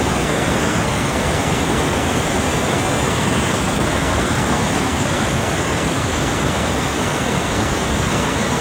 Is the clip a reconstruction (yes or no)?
yes